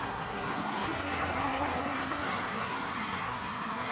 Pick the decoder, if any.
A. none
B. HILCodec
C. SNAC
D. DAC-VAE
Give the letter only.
C